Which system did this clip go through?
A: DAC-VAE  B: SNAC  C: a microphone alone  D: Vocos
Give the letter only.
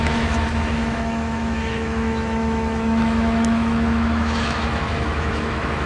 A